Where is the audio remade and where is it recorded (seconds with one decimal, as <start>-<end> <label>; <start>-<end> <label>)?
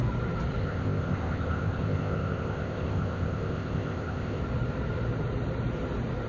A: 0.0-0.6 recorded; 0.6-4.4 remade; 4.4-6.3 recorded